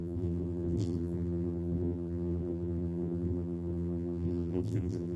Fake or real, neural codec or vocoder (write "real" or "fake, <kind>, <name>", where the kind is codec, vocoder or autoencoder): fake, vocoder, BigVGAN v2